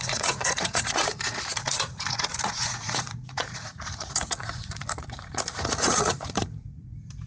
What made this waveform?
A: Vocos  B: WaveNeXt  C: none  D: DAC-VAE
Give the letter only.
A